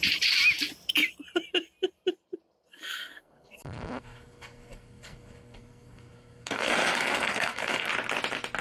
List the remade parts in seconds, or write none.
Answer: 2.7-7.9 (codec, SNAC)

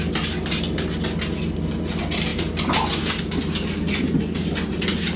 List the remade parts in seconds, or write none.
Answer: none

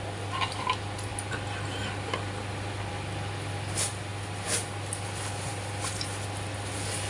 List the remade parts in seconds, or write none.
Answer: none

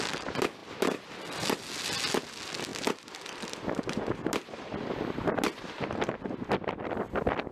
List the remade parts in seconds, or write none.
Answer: none